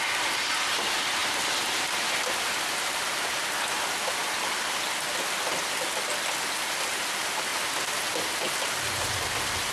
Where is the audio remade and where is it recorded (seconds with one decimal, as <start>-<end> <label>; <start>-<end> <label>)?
0.0-9.7 recorded